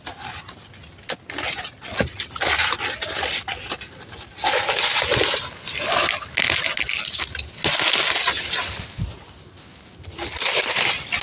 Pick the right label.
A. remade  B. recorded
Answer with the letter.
B